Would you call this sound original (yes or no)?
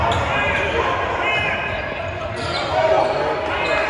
yes